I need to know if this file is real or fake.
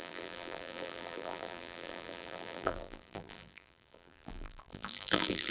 fake